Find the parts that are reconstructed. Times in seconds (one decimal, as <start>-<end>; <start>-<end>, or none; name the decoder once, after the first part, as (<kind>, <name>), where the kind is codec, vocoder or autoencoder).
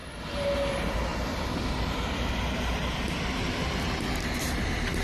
0.7-5.0 (vocoder, BigVGAN v2)